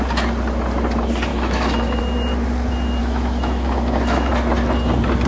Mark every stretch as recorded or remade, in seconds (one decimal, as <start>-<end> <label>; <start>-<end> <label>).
0.0-1.3 recorded; 1.3-2.0 remade; 2.0-3.0 recorded; 3.0-4.3 remade; 4.3-5.3 recorded